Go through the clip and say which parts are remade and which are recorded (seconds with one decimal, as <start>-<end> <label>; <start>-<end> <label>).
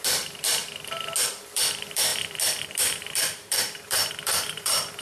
0.0-0.6 remade; 0.6-1.4 recorded; 1.4-5.0 remade